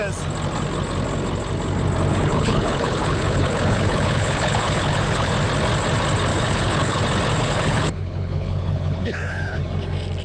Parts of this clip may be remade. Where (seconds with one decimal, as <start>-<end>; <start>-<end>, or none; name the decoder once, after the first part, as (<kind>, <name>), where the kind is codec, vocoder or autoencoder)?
2.1-5.3 (codec, HILCodec); 6.3-7.0; 7.4-9.6

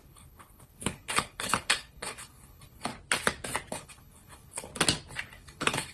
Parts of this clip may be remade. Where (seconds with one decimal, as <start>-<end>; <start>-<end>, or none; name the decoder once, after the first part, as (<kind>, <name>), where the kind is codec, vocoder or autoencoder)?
0.0-2.9 (codec, HILCodec); 3.7-4.7; 5.2-5.9

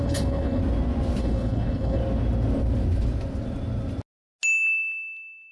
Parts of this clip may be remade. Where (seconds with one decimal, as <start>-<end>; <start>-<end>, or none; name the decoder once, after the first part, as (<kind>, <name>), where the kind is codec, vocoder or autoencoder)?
0.0-0.6 (codec, HILCodec); 1.2-2.0